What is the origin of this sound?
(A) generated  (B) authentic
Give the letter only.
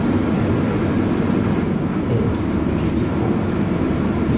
B